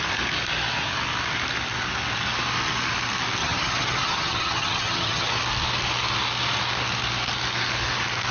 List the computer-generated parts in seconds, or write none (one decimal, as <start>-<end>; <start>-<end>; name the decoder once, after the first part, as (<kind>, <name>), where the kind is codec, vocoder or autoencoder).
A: 3.4-5.3 (vocoder, HiFi-GAN)